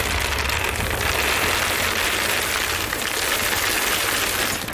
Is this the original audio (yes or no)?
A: yes